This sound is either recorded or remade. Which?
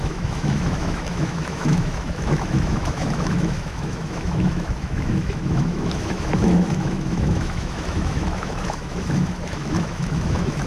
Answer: remade